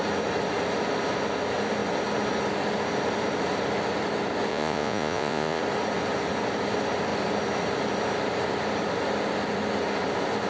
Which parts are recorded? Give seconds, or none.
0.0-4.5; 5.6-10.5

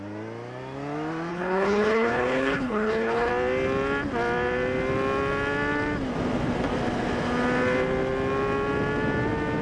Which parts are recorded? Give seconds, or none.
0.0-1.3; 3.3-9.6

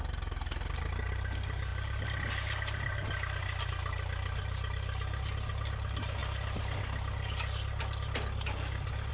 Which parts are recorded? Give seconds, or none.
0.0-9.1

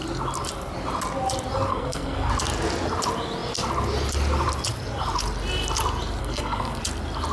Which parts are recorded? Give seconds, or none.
0.0-1.7; 2.3-6.2; 6.8-7.3